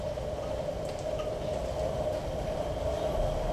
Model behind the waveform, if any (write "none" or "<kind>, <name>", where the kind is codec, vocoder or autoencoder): vocoder, BigVGAN v2